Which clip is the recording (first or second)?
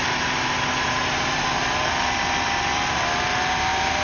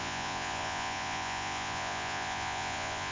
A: first